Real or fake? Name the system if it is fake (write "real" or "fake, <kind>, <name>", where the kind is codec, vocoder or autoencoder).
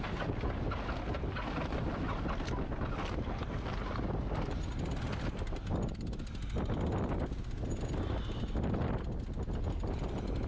real